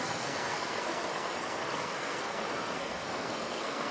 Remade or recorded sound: remade